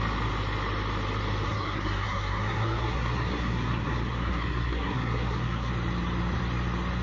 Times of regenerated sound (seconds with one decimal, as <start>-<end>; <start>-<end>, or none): 1.5-5.7